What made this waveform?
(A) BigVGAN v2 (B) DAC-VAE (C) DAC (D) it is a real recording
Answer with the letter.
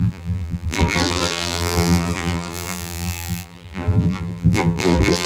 A